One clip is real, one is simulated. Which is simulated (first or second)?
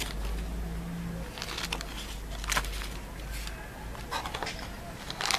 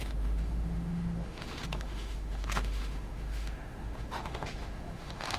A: second